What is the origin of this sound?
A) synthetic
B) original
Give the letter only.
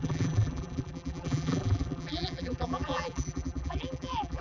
A